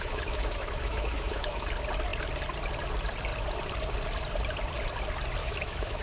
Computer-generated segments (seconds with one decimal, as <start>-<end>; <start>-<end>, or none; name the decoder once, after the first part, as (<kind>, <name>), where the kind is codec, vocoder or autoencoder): 0.0-1.7 (autoencoder, DAC-VAE); 5.4-6.0